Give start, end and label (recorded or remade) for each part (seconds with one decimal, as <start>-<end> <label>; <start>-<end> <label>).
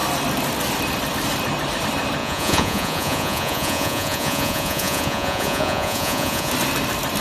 0.0-2.2 recorded; 2.2-6.5 remade; 6.5-7.2 recorded